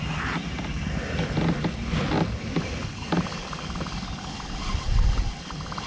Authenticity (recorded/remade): recorded